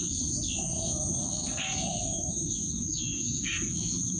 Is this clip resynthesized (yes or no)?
yes